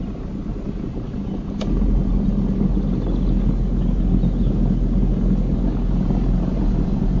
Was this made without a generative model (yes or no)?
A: yes